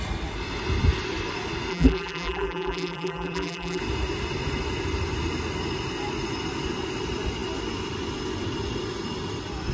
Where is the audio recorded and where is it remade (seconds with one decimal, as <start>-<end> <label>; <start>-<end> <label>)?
0.0-1.7 recorded; 1.7-3.8 remade; 3.8-9.7 recorded

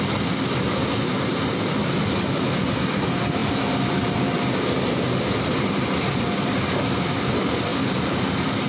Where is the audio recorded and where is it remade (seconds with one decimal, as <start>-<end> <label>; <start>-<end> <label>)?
0.0-8.7 recorded